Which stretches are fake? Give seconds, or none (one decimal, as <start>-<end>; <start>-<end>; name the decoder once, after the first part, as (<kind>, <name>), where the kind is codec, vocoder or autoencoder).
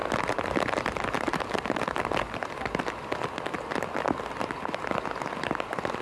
none